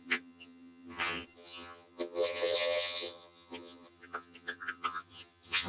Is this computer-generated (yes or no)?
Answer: yes